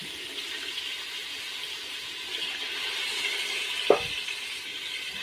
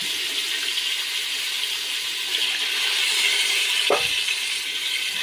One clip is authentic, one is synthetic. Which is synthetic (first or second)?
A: second